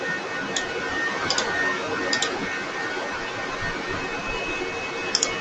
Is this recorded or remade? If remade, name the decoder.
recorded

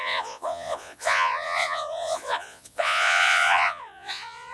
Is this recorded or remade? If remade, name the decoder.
remade, vocoder, Vocos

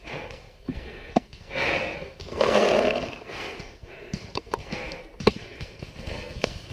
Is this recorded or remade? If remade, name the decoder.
remade, codec, SNAC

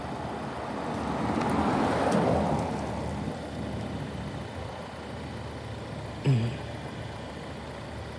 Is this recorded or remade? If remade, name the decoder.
recorded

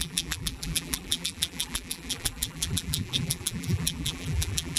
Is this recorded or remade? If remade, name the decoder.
remade, vocoder, BigVGAN v2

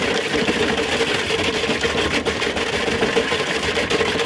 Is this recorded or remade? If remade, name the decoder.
recorded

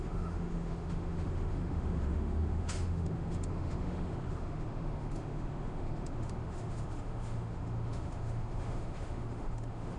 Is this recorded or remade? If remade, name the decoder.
remade, autoencoder, DAC-VAE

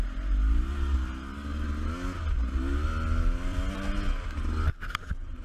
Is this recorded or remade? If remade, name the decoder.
recorded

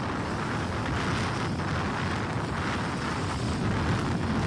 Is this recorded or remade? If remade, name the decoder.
recorded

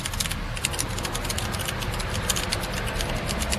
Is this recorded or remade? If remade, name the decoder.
recorded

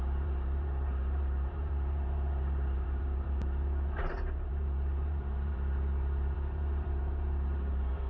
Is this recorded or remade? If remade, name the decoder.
remade, vocoder, BigVGAN v2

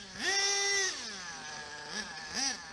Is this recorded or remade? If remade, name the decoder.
recorded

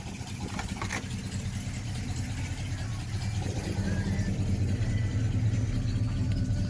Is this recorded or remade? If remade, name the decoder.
recorded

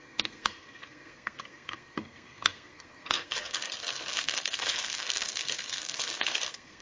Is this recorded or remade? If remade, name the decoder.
remade, codec, SNAC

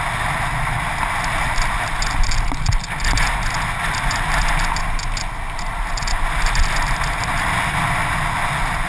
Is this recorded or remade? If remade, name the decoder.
recorded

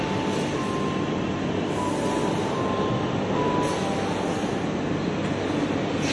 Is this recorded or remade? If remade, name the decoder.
recorded